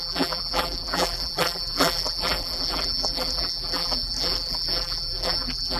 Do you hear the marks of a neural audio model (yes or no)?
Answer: yes